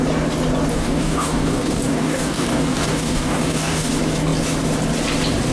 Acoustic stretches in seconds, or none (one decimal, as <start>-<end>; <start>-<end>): 0.0-0.7; 3.9-5.5